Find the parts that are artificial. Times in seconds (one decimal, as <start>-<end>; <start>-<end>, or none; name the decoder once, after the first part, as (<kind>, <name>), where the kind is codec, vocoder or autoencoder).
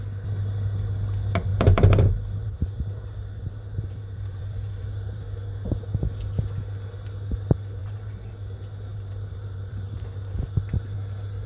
1.5-5.2 (vocoder, BigVGAN v2); 7.8-8.3; 8.9-10.4